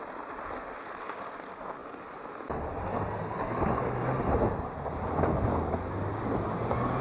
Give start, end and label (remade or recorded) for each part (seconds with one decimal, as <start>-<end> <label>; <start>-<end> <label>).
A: 0.0-7.0 recorded